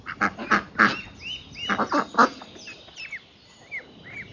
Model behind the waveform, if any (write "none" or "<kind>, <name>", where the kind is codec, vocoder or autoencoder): none